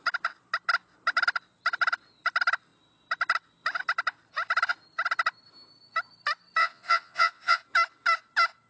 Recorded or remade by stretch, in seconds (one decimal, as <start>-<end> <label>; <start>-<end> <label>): 0.0-6.6 recorded; 6.6-7.6 remade; 7.6-8.7 recorded